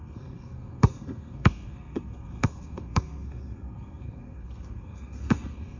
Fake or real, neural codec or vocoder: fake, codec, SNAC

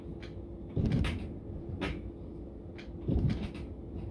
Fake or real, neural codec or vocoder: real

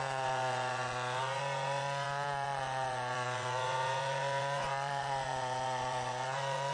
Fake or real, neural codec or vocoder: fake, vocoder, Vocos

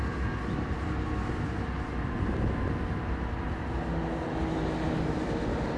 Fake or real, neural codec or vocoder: real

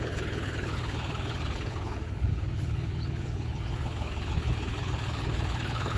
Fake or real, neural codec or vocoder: fake, codec, HILCodec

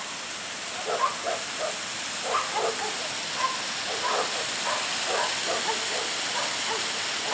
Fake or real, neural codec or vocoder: real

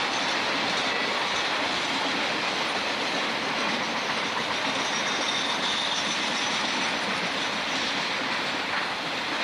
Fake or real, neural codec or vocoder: real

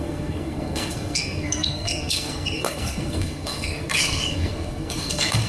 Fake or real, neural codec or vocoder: fake, codec, SNAC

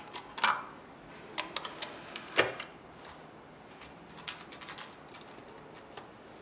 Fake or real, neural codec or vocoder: real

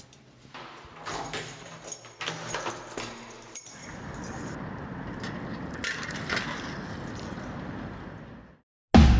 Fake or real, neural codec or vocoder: real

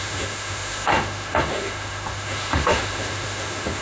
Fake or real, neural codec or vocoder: fake, autoencoder, DAC-VAE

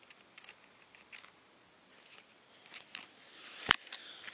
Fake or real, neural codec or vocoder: real